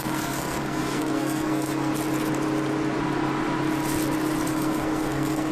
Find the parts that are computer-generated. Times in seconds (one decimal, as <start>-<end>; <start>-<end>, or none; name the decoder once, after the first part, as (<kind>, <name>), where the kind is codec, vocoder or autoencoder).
0.0-1.9 (codec, SNAC); 4.5-5.5